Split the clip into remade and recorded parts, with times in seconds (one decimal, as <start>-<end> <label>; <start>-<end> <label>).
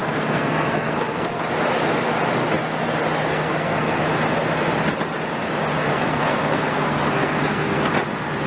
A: 0.0-1.4 remade; 1.4-3.3 recorded; 3.3-4.0 remade; 4.0-5.9 recorded; 5.9-7.9 remade; 7.9-8.5 recorded